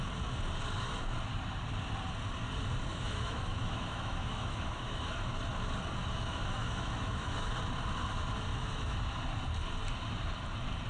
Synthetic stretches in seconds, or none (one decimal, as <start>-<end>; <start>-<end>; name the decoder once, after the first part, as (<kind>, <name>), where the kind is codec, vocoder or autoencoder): 2.9-5.3 (autoencoder, DAC-VAE); 6.0-7.5; 8.5-9.0